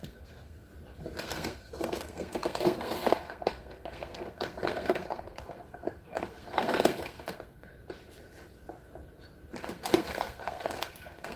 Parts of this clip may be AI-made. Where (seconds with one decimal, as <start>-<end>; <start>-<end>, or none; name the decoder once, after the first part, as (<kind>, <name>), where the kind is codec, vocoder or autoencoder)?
0.0-0.7 (codec, SNAC); 1.2-7.7; 9.6-11.4